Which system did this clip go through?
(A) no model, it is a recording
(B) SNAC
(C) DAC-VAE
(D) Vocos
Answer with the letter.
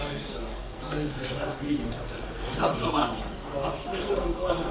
B